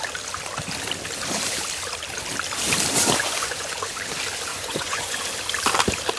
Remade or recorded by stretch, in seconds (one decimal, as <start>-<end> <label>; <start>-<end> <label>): 0.0-3.2 recorded; 3.2-3.9 remade; 3.9-4.5 recorded; 4.5-5.2 remade; 5.2-6.2 recorded